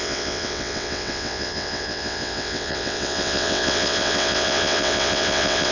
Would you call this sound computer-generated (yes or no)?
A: yes